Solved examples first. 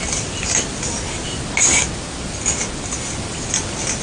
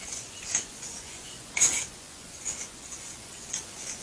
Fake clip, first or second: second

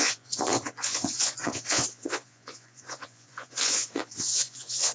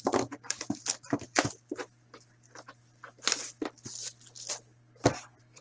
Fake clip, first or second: first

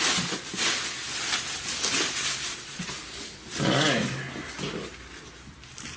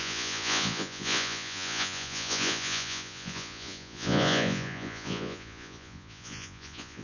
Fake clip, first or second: second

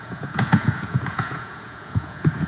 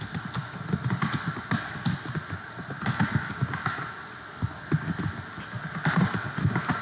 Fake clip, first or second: first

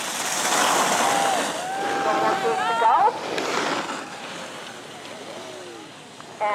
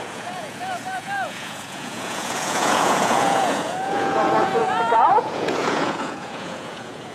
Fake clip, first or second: second